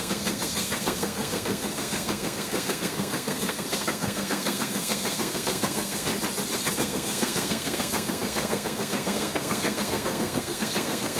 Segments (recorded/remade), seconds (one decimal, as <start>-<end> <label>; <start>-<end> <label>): 0.0-6.1 remade; 6.1-6.7 recorded; 6.7-11.2 remade